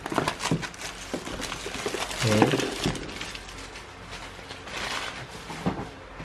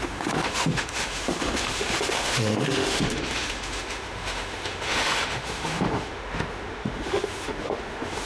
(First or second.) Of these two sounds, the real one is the first